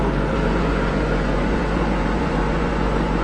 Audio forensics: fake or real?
fake